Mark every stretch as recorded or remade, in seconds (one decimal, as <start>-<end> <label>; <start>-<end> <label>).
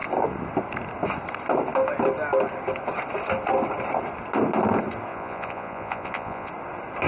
0.0-5.1 recorded; 5.1-6.5 remade; 6.5-7.1 recorded